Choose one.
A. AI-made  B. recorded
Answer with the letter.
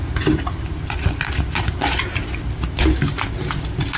B